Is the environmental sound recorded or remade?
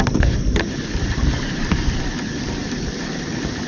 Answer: recorded